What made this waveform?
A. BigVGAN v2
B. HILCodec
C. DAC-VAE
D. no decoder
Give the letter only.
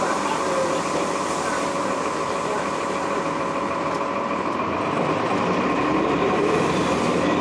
A